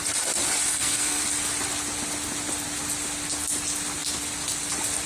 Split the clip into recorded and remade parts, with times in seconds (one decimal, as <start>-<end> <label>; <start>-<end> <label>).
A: 0.0-0.7 recorded; 0.7-1.2 remade; 1.2-5.1 recorded